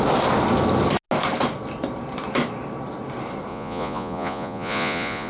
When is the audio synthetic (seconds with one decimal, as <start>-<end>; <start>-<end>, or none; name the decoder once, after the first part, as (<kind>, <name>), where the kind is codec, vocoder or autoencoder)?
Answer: 3.5-5.3 (vocoder, Vocos)